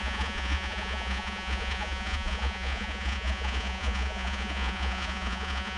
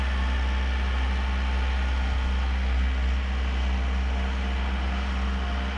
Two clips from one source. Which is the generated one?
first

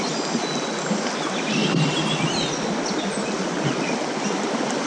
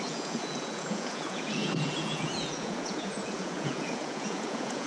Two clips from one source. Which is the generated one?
second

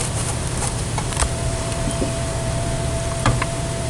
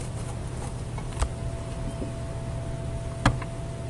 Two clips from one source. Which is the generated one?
first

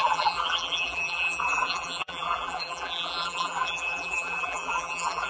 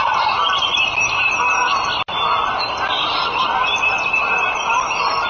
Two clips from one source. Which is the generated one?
first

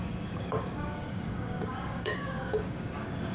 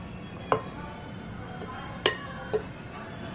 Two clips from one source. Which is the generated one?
first